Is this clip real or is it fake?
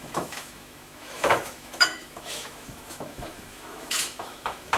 fake